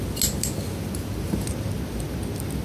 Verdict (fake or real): real